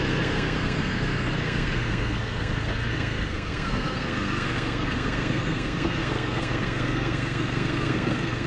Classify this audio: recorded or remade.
remade